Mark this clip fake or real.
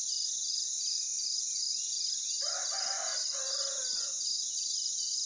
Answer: real